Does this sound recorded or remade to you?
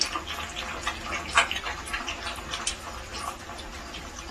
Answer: recorded